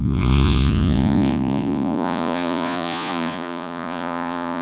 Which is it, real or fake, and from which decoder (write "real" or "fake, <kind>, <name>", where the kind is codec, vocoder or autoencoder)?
fake, vocoder, Vocos